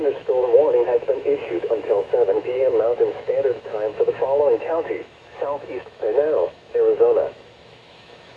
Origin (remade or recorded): remade